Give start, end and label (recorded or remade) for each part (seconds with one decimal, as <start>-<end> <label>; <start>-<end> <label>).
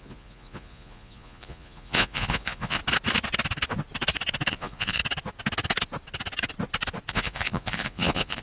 0.0-2.8 remade; 2.8-4.5 recorded; 4.5-5.0 remade; 5.0-7.1 recorded; 7.1-8.4 remade